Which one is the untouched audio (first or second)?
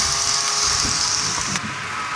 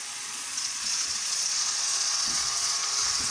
first